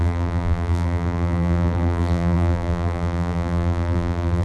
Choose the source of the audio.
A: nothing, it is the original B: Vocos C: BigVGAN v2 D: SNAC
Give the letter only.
C